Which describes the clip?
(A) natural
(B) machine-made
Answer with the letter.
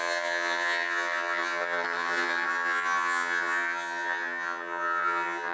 B